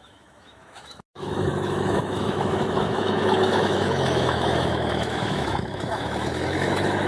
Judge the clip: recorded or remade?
remade